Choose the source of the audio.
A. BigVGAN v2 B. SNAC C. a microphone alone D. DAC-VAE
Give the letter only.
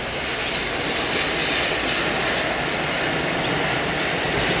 C